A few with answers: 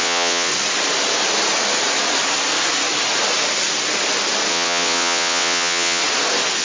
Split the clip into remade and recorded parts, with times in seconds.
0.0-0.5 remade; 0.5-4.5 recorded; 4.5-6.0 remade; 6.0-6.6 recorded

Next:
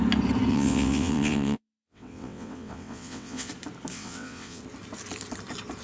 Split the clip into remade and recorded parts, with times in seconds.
0.0-0.5 recorded; 0.5-3.5 remade; 3.5-3.9 recorded; 3.9-4.6 remade; 4.6-5.8 recorded

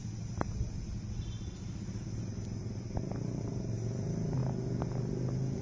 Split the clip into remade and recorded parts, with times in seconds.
0.0-5.6 recorded